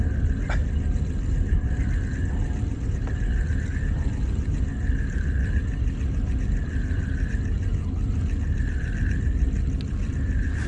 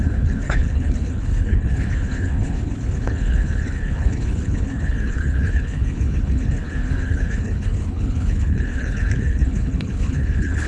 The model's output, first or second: second